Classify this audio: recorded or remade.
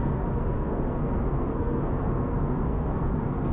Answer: remade